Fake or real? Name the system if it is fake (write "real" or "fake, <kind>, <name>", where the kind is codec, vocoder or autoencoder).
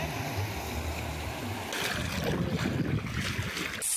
real